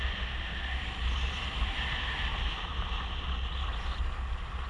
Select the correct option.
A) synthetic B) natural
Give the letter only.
B